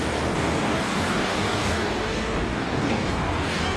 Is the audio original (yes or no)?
no